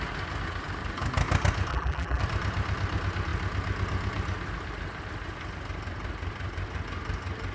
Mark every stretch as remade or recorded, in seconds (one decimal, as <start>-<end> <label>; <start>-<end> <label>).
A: 0.0-1.7 recorded; 1.7-2.2 remade; 2.2-7.5 recorded